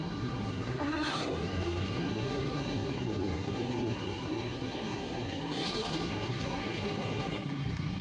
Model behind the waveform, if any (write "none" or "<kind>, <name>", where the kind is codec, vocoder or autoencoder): codec, SNAC